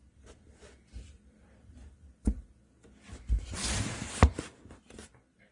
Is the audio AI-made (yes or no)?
no